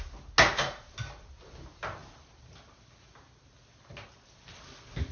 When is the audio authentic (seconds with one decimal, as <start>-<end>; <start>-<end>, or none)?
0.0-5.1